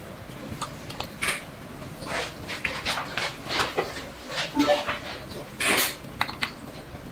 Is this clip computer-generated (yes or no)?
no